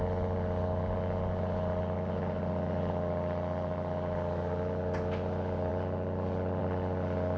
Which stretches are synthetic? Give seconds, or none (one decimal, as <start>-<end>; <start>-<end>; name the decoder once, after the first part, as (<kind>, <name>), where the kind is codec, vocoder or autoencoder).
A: none